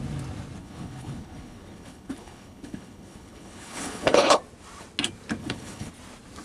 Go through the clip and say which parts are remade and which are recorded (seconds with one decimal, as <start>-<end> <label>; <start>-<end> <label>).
0.0-0.6 recorded; 0.6-4.4 remade; 4.4-5.4 recorded; 5.4-5.9 remade; 5.9-6.4 recorded